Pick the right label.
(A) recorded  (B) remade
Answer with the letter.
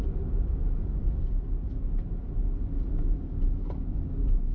A